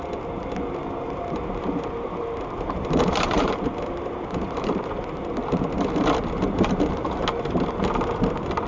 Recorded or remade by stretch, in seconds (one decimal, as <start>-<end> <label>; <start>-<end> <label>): 0.0-0.8 recorded; 0.8-5.1 remade; 5.1-8.7 recorded